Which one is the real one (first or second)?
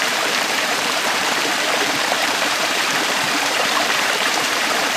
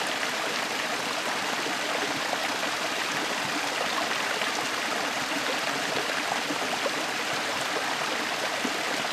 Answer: second